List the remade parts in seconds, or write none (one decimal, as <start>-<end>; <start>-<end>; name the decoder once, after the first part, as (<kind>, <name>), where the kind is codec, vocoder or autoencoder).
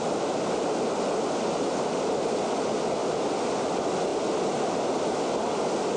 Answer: none